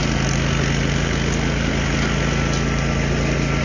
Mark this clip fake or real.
real